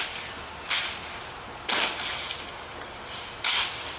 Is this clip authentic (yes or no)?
yes